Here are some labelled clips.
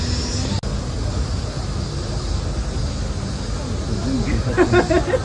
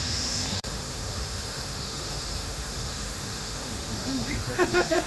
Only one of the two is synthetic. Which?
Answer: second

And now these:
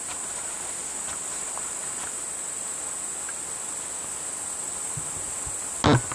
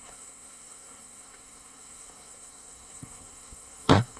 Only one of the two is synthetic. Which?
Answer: second